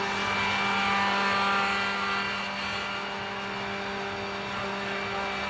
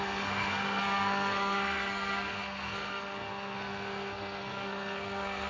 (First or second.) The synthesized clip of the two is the second